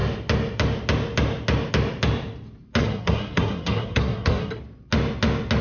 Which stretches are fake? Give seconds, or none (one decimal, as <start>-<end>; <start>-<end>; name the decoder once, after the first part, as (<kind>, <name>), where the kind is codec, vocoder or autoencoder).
2.8-4.6 (codec, SNAC)

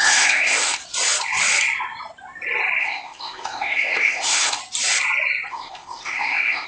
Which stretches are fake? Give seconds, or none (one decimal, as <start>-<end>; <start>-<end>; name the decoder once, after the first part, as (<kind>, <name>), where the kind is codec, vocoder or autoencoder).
0.0-0.8 (codec, ZipCodec); 2.8-4.6; 5.5-6.7

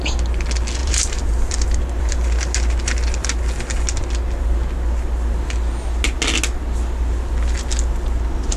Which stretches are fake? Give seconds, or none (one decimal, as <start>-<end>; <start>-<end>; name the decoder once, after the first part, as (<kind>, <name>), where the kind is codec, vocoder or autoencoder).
0.8-2.1 (vocoder, BigVGAN v2)

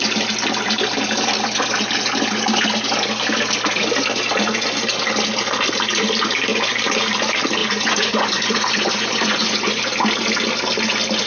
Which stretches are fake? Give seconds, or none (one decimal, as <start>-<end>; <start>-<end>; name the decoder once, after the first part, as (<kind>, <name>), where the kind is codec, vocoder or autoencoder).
7.6-9.8 (vocoder, Vocos)

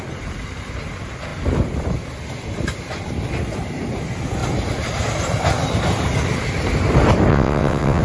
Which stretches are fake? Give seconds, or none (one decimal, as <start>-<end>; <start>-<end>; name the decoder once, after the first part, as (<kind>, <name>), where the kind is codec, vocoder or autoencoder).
7.3-8.0 (vocoder, WaveNeXt)

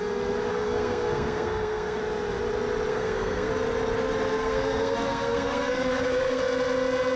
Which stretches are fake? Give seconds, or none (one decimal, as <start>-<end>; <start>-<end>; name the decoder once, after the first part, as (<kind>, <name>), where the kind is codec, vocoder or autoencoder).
0.5-2.0 (codec, SNAC); 2.9-3.5; 4.4-6.4